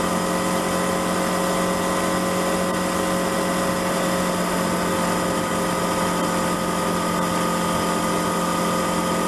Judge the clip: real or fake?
real